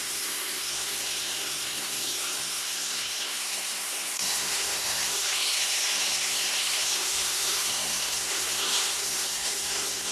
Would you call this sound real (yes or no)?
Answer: no